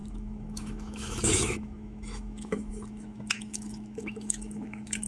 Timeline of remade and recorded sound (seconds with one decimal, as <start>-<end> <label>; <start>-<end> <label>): 0.0-5.1 remade